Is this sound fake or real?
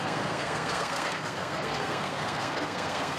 fake